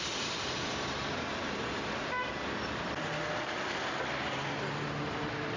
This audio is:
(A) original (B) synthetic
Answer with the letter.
A